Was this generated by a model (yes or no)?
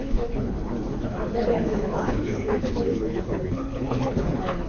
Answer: yes